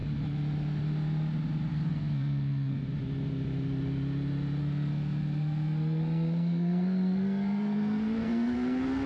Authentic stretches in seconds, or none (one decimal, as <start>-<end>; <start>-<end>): 0.0-1.7; 2.8-4.6